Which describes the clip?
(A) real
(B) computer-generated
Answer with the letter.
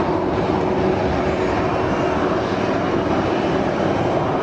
A